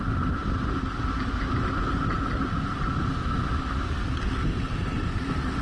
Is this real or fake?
real